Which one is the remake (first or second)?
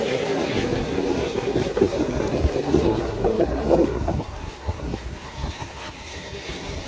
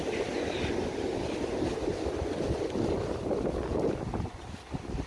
first